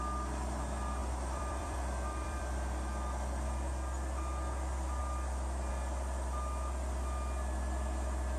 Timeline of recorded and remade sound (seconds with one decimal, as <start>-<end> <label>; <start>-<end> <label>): 0.0-1.0 recorded; 1.0-2.4 remade; 2.4-5.0 recorded; 5.0-5.7 remade; 5.7-8.4 recorded